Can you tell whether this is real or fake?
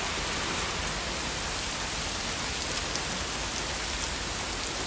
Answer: real